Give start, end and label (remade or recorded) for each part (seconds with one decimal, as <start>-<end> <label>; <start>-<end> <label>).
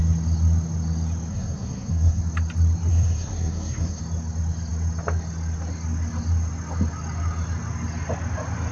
0.0-1.3 recorded; 1.3-2.2 remade; 2.2-2.9 recorded; 2.9-4.0 remade; 4.0-8.7 recorded